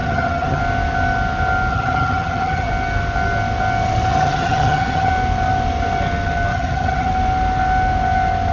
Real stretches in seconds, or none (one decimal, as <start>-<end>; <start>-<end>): 0.6-1.7; 2.7-4.1; 5.1-6.5; 7.1-8.5